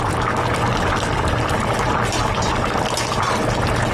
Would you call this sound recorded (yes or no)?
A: yes